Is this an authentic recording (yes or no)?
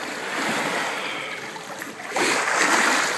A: yes